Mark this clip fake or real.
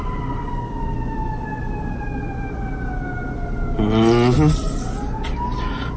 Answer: real